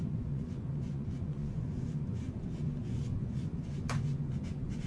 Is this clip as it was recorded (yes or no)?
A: no